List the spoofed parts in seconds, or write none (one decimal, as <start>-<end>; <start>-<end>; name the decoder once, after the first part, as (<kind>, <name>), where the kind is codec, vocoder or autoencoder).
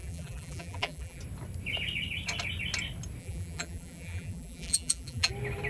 0.0-1.2 (vocoder, BigVGAN v2); 3.2-5.3